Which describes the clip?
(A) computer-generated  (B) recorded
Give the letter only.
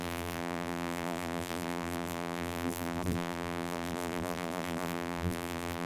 A